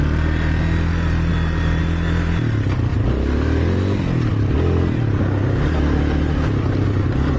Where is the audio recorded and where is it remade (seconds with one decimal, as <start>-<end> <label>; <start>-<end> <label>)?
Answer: 0.0-7.4 recorded